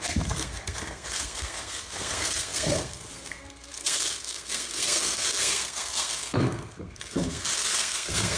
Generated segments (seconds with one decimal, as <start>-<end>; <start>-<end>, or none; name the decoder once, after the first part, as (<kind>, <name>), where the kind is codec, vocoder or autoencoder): 0.0-8.4 (codec, SNAC)